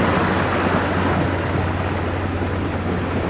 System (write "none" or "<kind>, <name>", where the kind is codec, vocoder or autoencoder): none